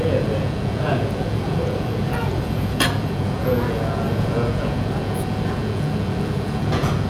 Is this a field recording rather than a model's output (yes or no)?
no